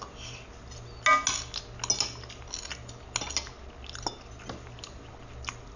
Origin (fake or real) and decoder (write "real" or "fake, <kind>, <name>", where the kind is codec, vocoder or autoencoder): real